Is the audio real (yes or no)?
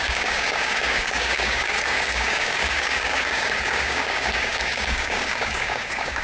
no